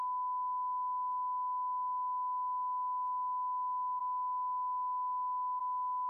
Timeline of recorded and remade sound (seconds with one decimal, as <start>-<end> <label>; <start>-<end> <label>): 0.0-6.1 recorded

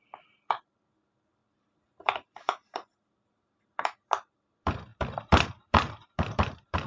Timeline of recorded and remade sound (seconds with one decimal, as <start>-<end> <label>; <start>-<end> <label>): 0.0-6.9 remade

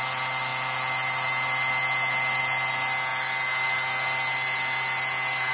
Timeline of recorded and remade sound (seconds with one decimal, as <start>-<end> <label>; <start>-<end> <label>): 0.0-5.5 recorded

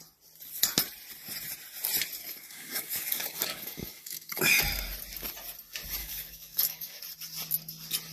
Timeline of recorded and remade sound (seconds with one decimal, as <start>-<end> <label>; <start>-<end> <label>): 0.0-2.2 recorded; 2.2-4.6 remade; 4.6-6.0 recorded; 6.0-7.0 remade; 7.0-8.1 recorded

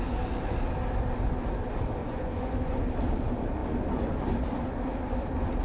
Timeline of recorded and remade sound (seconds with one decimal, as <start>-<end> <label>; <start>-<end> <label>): 0.0-2.0 recorded; 2.0-2.8 remade; 2.8-5.6 recorded

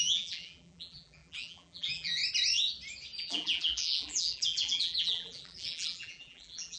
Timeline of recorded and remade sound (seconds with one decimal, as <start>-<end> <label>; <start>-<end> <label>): 0.0-2.2 remade; 2.2-3.2 recorded; 3.2-6.8 remade